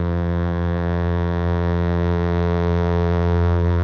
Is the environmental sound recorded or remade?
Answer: remade